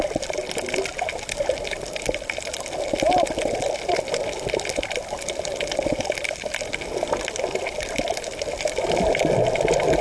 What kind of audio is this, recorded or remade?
recorded